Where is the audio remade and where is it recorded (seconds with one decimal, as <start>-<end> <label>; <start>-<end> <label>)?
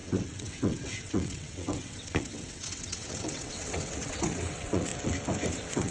0.0-4.9 remade; 4.9-5.5 recorded; 5.5-5.9 remade